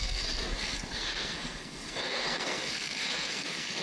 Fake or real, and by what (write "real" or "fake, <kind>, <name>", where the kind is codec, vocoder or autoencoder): fake, codec, SNAC